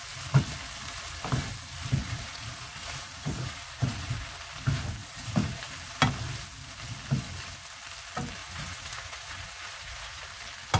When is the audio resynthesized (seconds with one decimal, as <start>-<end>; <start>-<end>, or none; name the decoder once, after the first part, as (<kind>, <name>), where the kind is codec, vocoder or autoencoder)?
2.0-4.1 (vocoder, Vocos); 5.0-5.6; 8.4-10.2